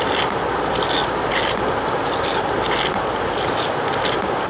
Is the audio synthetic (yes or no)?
no